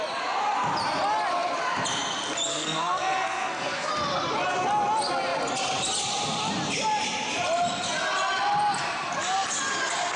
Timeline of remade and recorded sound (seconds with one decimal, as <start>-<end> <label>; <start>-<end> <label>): 0.0-2.5 recorded; 2.5-3.9 remade; 3.9-10.2 recorded